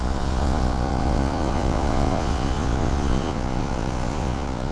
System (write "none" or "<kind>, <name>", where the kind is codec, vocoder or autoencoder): vocoder, Vocos